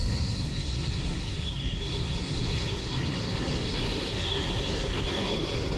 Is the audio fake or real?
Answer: fake